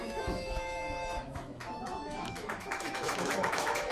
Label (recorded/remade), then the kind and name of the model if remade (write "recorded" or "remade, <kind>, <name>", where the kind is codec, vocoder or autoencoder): remade, autoencoder, DAC-VAE